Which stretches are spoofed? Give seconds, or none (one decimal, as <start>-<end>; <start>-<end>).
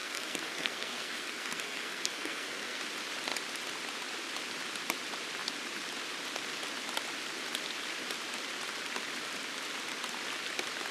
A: 0.0-2.8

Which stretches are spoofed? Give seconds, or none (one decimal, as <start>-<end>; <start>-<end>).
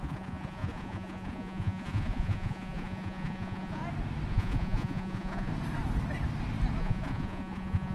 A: 0.0-3.8; 4.3-5.5; 6.8-7.9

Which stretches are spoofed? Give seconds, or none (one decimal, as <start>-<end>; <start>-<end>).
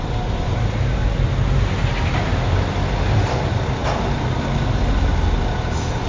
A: none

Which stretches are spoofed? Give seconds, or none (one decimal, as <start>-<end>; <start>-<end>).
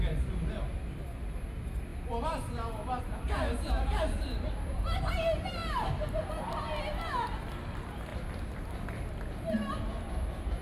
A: none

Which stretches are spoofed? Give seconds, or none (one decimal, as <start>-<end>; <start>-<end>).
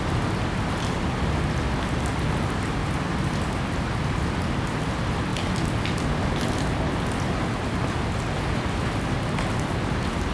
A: none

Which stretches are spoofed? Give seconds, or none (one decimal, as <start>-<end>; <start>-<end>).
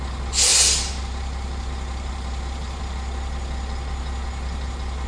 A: 0.5-2.8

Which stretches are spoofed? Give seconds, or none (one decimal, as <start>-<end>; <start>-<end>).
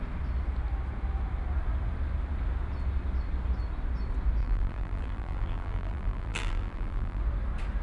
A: 4.4-7.2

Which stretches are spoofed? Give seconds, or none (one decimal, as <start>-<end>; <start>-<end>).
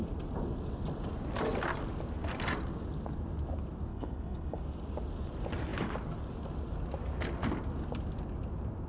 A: 3.9-4.6